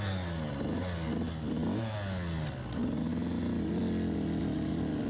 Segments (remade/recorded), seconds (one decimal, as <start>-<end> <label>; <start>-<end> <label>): 0.0-5.1 recorded